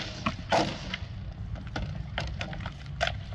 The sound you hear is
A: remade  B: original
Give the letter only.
B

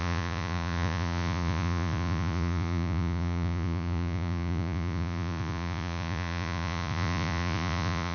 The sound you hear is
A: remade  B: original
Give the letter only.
A